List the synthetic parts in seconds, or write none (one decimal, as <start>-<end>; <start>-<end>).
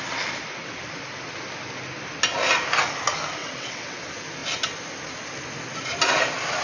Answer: 3.4-4.0